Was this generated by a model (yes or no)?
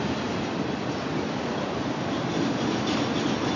no